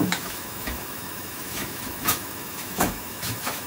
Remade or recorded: remade